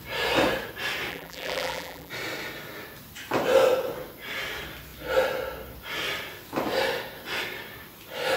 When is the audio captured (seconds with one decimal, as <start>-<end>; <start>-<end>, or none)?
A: 0.0-1.1; 2.1-8.4